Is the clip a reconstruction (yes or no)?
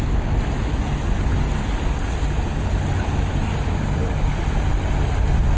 no